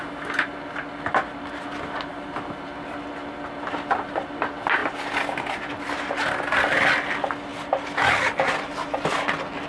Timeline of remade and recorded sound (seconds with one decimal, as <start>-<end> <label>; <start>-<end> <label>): 0.0-9.7 recorded

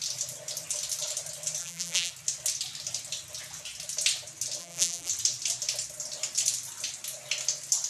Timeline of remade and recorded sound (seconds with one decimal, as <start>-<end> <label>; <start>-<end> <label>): 0.0-1.6 recorded; 1.6-2.1 remade; 2.1-4.6 recorded; 4.6-5.1 remade; 5.1-7.9 recorded

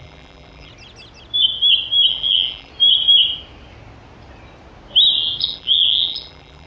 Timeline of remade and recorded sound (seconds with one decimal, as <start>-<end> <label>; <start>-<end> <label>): 0.0-0.7 remade; 0.7-2.1 recorded; 2.1-2.7 remade; 2.7-5.4 recorded; 5.4-6.7 remade

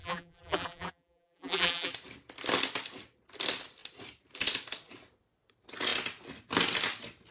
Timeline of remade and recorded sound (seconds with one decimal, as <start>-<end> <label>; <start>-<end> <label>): 0.0-1.9 remade; 1.9-7.3 recorded

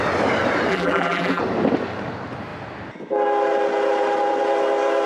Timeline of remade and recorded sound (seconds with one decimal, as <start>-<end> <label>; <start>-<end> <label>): 0.0-0.7 recorded; 0.7-1.4 remade; 1.4-5.1 recorded

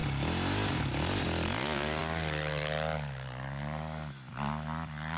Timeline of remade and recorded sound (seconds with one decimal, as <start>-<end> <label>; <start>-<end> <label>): 0.0-5.2 recorded

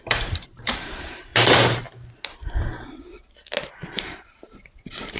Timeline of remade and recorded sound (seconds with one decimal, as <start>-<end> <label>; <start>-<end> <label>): 0.0-1.3 remade; 1.3-3.9 recorded; 3.9-5.2 remade